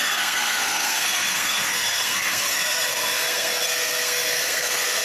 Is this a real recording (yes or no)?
no